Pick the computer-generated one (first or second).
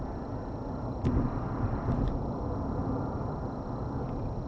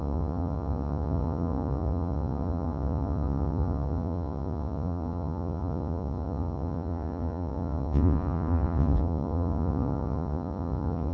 second